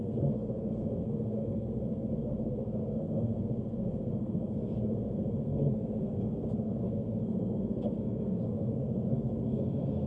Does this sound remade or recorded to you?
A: remade